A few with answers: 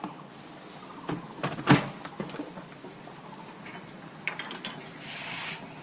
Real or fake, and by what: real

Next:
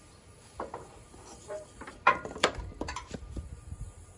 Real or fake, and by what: fake, vocoder, BigVGAN v2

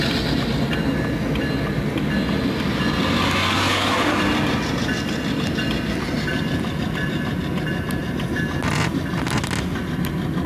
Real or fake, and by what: real